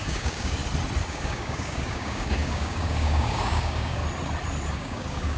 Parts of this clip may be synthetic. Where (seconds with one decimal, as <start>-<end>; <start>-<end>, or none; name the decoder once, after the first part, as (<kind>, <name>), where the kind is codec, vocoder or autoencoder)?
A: 0.0-0.6 (codec, DAC); 1.1-4.0; 4.7-5.4